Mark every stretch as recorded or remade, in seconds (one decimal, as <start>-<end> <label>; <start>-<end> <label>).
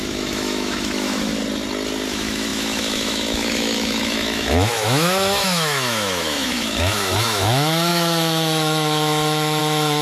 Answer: 0.0-1.3 remade; 1.3-2.1 recorded; 2.1-10.0 remade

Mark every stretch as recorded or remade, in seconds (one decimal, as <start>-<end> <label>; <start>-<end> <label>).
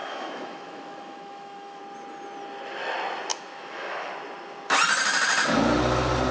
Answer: 0.0-1.8 remade; 1.8-3.3 recorded; 3.3-4.1 remade; 4.1-6.3 recorded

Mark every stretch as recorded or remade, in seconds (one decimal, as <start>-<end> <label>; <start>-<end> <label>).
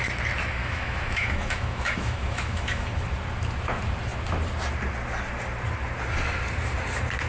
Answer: 0.0-0.6 recorded; 0.6-2.9 remade; 2.9-7.3 recorded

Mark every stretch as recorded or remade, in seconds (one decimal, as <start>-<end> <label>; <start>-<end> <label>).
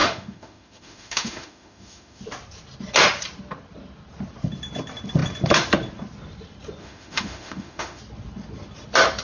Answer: 0.0-2.2 remade; 2.2-6.8 recorded; 6.8-8.0 remade; 8.0-9.2 recorded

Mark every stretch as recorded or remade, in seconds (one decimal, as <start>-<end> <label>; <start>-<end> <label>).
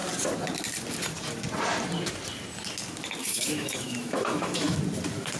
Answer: 0.0-3.2 recorded; 3.2-4.8 remade; 4.8-5.4 recorded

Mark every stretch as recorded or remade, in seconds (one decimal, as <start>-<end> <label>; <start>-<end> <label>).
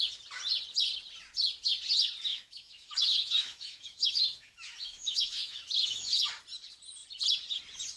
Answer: 0.0-2.3 recorded; 2.3-6.3 remade; 6.3-8.0 recorded